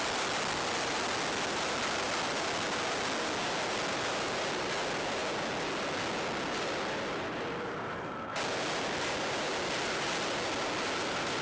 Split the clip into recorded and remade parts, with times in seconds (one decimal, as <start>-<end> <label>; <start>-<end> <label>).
0.0-11.4 recorded

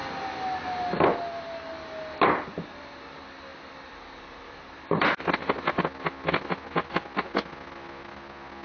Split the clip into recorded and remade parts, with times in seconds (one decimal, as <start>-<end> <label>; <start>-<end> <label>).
0.0-3.5 recorded; 3.5-5.8 remade; 5.8-8.6 recorded